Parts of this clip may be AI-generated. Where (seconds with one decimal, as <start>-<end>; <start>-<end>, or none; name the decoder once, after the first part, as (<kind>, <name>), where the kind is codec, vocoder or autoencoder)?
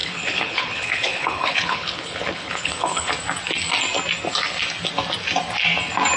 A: 0.0-3.1 (codec, HILCodec)